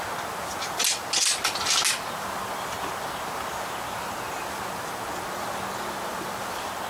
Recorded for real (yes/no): yes